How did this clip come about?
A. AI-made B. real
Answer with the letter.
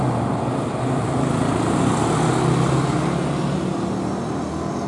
B